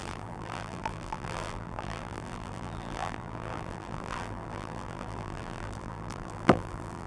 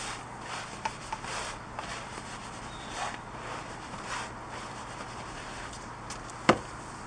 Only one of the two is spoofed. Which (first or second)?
first